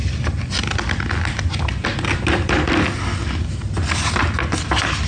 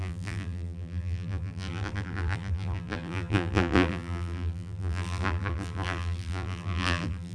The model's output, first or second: second